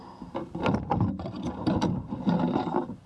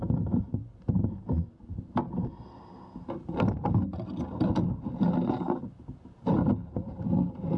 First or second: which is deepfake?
first